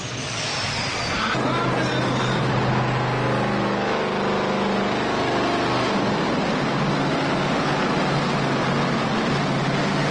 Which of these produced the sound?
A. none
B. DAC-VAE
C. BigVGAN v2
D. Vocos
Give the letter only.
A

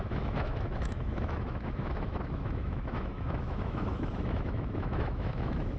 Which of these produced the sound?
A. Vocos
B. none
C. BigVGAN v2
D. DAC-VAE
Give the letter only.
D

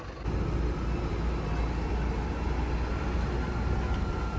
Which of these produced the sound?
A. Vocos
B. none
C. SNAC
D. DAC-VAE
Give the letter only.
B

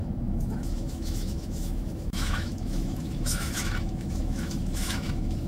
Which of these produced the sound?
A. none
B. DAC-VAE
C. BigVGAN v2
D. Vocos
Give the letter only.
B